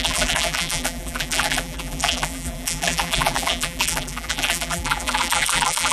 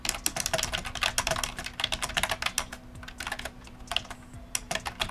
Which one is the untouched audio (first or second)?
second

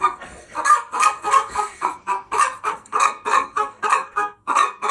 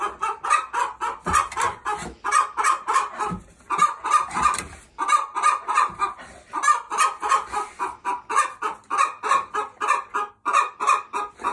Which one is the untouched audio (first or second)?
second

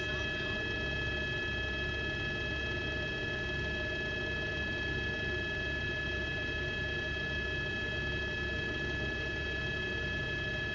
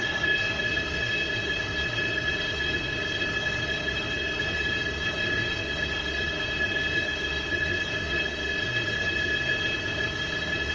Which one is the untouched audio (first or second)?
first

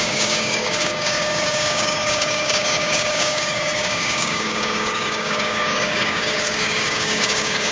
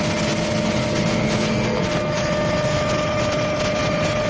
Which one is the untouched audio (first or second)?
second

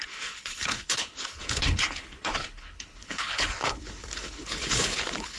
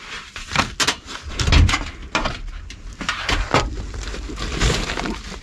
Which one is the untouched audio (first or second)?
second